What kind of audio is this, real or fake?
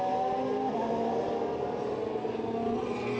real